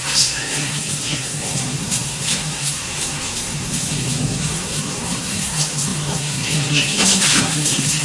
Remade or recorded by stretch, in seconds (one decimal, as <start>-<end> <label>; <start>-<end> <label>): 0.0-8.0 remade